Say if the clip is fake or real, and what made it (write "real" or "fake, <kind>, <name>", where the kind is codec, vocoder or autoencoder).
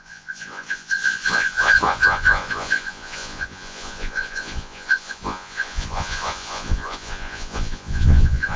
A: fake, vocoder, Vocos